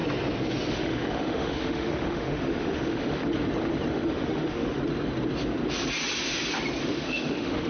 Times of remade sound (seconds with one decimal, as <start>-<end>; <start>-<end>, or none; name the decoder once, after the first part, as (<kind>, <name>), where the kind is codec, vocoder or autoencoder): 0.7-3.2 (autoencoder, DAC-VAE); 3.9-4.8; 6.8-7.7